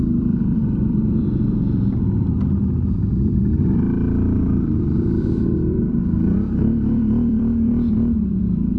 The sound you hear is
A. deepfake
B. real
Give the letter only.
A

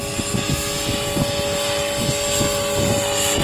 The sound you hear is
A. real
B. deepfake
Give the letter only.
A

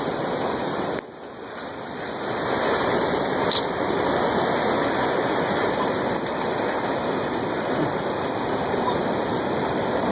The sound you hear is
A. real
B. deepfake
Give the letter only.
B